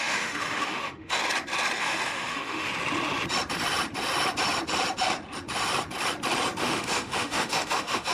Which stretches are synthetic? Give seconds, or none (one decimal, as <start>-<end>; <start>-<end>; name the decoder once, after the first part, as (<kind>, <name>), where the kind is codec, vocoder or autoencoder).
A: 0.0-1.2 (autoencoder, DAC-VAE); 1.8-2.7; 6.6-8.1